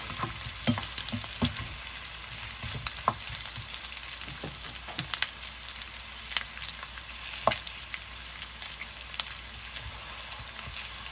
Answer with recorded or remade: recorded